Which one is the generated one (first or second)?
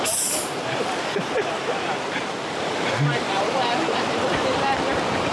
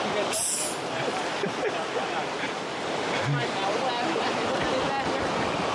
first